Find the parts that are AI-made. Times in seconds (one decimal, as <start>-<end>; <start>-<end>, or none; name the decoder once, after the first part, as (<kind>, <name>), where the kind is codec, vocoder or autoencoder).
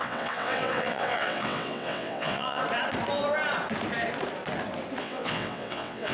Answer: 0.0-2.6 (vocoder, WaveNeXt); 5.0-6.1